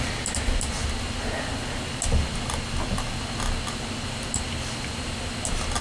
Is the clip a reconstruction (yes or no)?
no